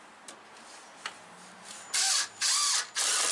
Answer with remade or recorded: recorded